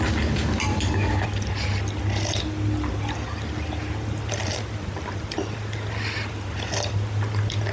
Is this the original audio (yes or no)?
yes